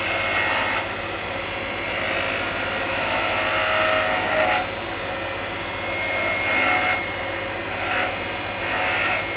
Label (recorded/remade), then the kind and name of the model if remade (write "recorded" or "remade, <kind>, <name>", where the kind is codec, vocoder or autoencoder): recorded